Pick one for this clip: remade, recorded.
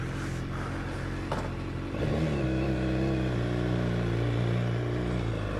recorded